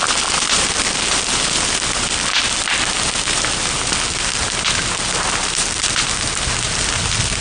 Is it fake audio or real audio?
real